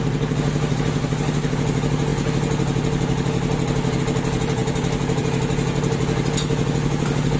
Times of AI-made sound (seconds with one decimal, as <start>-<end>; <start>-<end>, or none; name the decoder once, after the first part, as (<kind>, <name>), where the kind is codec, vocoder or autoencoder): none